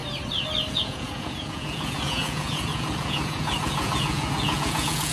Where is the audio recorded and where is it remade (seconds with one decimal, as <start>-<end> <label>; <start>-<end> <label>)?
0.0-0.7 recorded; 0.7-5.1 remade